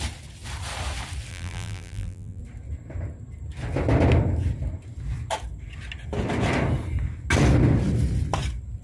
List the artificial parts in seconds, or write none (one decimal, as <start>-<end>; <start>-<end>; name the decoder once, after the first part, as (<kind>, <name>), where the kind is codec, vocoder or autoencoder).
1.3-2.4 (vocoder, BigVGAN v2)